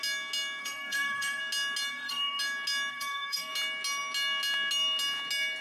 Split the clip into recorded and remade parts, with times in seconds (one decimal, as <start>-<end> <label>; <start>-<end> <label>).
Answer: 0.0-0.6 recorded; 0.6-1.4 remade; 1.4-1.9 recorded; 1.9-2.4 remade; 2.4-2.9 recorded; 2.9-3.5 remade; 3.5-5.6 recorded